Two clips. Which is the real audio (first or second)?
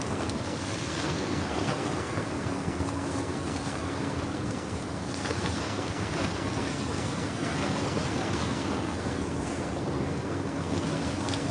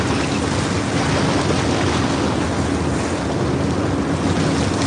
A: second